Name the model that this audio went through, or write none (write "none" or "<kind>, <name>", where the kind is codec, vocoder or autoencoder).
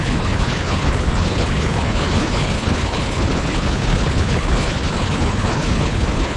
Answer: codec, HILCodec